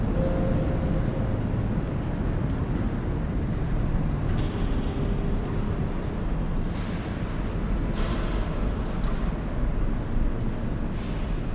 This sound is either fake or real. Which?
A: real